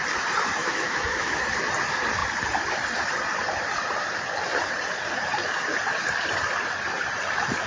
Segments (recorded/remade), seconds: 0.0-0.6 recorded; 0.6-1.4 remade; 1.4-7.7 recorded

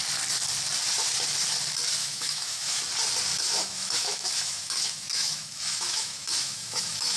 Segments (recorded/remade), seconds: 0.0-2.0 recorded; 2.0-2.8 remade; 2.8-3.3 recorded; 3.3-7.2 remade

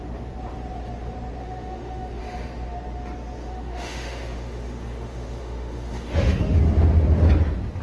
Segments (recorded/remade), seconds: 0.0-1.4 recorded; 1.4-2.2 remade; 2.2-3.4 recorded; 3.4-6.6 remade; 6.6-7.8 recorded